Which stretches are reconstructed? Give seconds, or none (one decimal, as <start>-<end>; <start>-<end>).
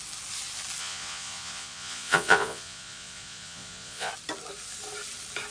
0.8-4.1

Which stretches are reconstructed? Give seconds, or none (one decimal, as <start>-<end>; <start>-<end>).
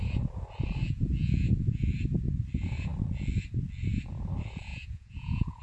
0.8-1.8; 4.7-5.6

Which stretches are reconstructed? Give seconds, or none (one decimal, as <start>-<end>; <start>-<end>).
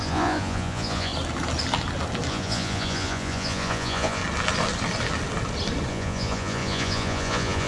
0.0-1.1; 2.3-4.2; 5.9-7.7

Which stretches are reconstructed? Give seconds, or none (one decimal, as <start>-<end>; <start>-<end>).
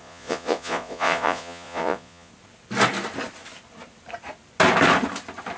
0.0-2.3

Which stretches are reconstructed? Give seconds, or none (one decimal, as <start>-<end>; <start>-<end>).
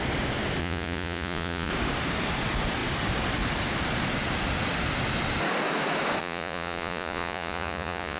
0.6-1.7; 6.2-8.2